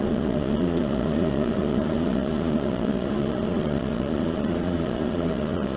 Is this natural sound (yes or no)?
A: no